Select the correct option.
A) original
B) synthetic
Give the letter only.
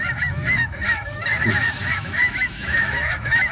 B